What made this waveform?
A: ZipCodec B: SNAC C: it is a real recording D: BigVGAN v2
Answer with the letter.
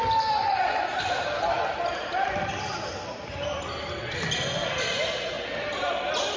D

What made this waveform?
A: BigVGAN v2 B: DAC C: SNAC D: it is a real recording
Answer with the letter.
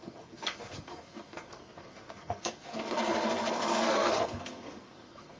C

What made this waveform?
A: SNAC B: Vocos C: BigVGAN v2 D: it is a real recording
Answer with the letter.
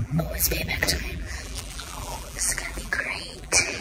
C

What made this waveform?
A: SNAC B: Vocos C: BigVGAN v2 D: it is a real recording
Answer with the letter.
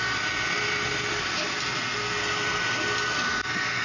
D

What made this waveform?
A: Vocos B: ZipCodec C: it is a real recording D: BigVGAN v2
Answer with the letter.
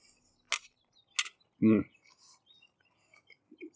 C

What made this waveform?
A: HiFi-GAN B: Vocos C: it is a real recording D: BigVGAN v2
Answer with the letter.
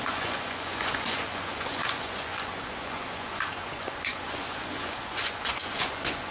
B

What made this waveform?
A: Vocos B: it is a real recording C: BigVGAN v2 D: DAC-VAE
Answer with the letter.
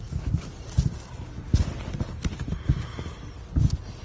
B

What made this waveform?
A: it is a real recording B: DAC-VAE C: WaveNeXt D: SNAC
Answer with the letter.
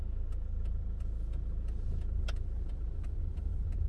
A